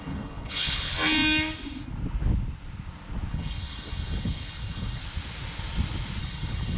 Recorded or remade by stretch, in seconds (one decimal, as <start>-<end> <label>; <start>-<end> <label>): 0.0-0.9 remade; 0.9-3.3 recorded; 3.3-5.0 remade; 5.0-6.2 recorded; 6.2-6.8 remade